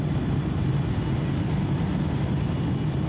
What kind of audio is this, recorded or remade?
recorded